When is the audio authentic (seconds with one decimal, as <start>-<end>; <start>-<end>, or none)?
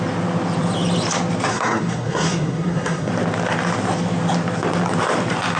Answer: 0.0-1.5; 3.1-5.6